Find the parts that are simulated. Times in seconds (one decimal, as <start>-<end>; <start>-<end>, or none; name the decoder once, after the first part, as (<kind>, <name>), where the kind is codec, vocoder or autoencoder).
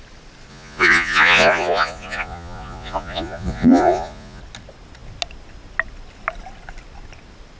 0.5-4.4 (vocoder, Vocos)